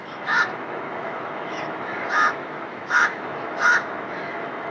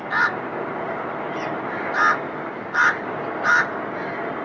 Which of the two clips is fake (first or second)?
first